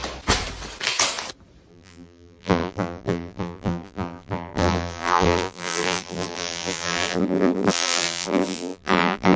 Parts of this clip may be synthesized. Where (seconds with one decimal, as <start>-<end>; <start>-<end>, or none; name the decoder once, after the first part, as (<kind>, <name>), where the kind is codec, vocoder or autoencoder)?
1.7-9.4 (vocoder, BigVGAN v2)